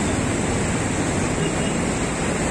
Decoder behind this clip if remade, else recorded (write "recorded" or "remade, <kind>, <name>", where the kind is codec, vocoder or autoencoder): recorded